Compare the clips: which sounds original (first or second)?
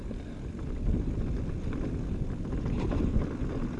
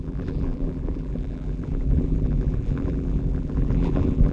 first